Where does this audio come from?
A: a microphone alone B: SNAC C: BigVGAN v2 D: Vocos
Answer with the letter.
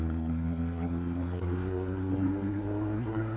B